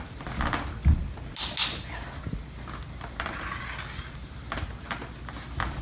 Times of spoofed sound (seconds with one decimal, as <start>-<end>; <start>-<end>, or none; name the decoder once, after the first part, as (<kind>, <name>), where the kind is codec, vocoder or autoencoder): none